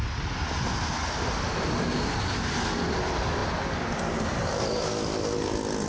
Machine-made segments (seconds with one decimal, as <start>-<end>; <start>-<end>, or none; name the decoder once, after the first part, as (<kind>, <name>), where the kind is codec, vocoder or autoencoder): none